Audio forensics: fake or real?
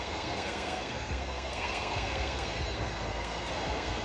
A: fake